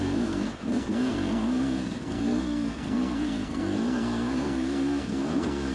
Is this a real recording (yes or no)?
no